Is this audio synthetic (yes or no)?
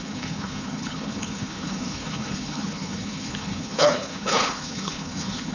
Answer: yes